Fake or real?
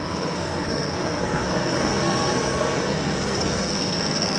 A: fake